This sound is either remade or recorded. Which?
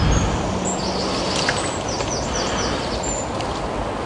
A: recorded